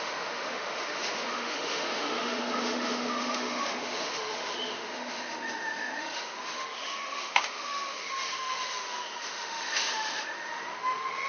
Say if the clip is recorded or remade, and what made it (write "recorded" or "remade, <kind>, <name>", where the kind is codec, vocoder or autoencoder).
remade, autoencoder, DAC-VAE